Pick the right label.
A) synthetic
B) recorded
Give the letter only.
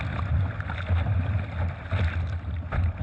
B